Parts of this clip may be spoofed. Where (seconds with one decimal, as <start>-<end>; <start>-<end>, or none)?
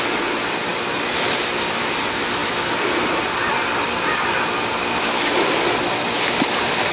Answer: none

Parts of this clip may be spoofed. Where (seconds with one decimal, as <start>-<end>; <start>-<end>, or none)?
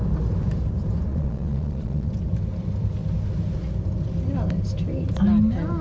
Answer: 1.1-2.1